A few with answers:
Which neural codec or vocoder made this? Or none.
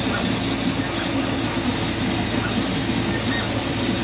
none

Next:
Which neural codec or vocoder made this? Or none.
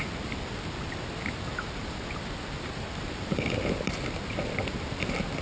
none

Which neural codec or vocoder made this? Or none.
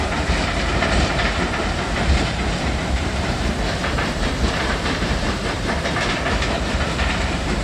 vocoder, BigVGAN v2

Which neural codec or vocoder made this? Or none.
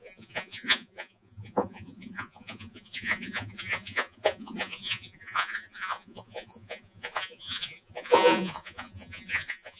vocoder, Vocos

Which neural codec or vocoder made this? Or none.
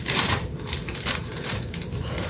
vocoder, BigVGAN v2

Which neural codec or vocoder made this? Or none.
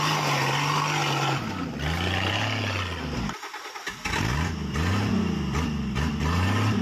none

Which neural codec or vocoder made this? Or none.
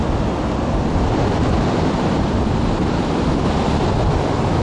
none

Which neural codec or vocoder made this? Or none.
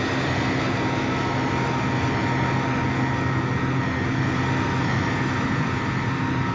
none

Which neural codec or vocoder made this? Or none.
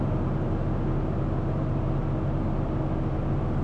none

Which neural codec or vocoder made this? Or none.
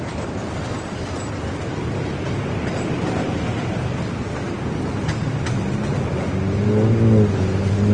none